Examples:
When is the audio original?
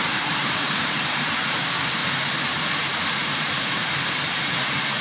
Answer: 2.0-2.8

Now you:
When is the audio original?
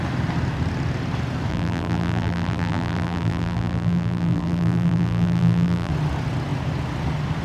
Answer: 0.0-1.5; 5.9-7.4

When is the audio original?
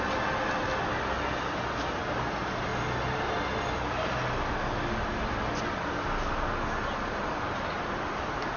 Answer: 0.0-8.6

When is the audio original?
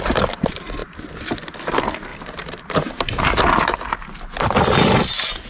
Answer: 0.0-2.1; 3.4-5.5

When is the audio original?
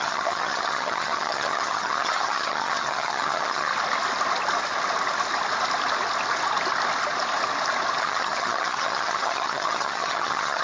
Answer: 3.7-8.0